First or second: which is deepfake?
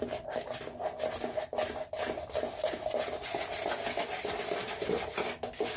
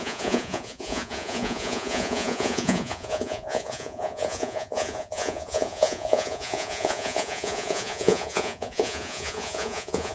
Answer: second